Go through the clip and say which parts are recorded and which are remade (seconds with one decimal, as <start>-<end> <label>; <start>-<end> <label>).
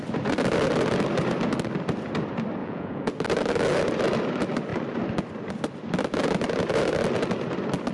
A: 0.0-2.6 recorded; 2.6-3.1 remade; 3.1-7.9 recorded